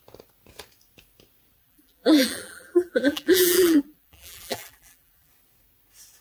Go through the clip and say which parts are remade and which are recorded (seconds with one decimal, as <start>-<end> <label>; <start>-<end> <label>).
0.0-1.6 recorded; 1.6-5.3 remade; 5.3-6.2 recorded